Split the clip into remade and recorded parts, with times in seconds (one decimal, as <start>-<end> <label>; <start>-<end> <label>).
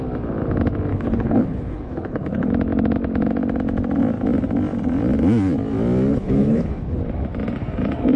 0.0-0.9 recorded; 0.9-2.5 remade; 2.5-6.1 recorded; 6.1-7.0 remade; 7.0-8.2 recorded